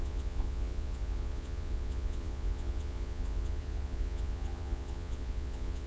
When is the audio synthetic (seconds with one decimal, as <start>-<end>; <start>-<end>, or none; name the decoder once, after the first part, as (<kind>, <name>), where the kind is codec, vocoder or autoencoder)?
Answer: 0.0-5.9 (vocoder, Vocos)